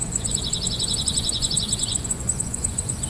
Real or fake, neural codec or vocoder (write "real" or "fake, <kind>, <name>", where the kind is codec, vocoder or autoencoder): fake, vocoder, Vocos